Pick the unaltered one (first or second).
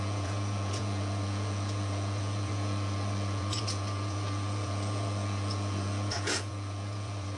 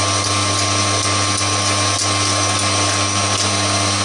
second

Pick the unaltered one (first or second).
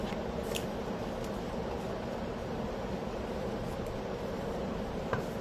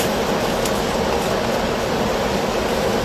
second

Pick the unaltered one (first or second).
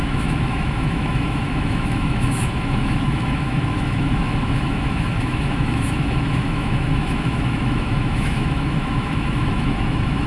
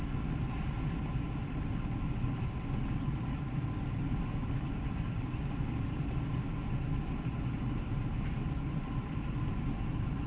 second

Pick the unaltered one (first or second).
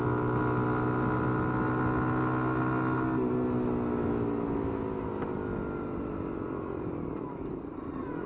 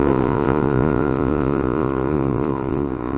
first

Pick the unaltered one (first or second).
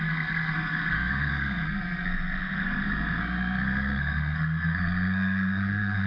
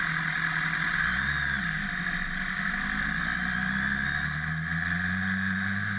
second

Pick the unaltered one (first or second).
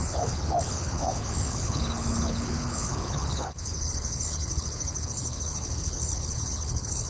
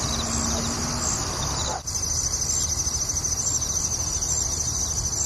second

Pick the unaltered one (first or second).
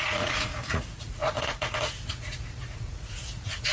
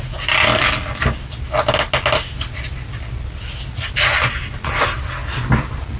second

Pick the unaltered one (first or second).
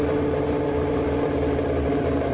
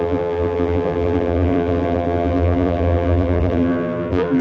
first